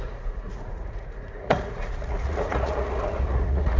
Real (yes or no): no